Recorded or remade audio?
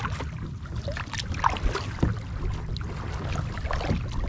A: recorded